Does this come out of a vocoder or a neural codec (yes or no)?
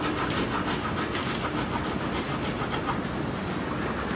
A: no